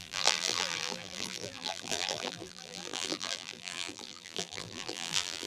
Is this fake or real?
fake